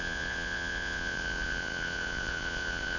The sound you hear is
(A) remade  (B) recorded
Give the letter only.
A